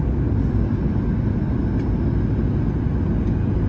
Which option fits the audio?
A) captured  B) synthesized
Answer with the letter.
A